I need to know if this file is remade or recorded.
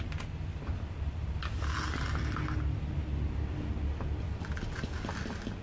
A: recorded